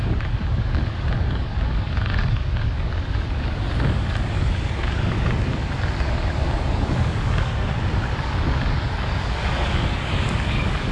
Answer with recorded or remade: remade